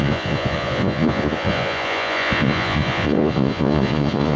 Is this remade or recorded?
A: remade